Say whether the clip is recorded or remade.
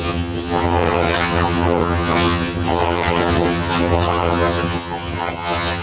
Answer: remade